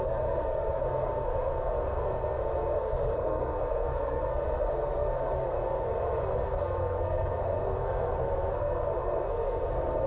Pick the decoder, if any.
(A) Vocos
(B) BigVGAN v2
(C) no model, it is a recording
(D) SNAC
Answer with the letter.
D